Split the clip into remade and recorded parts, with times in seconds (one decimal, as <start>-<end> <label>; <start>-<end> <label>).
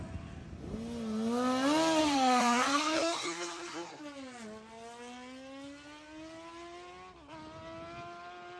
0.0-2.0 recorded; 2.0-4.0 remade; 4.0-8.6 recorded